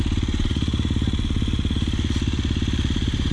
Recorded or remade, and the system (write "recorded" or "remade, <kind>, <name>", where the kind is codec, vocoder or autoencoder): recorded